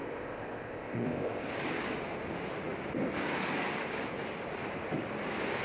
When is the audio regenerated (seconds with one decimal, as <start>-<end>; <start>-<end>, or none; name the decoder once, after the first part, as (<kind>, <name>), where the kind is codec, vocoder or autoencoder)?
0.0-1.5 (codec, ZipCodec)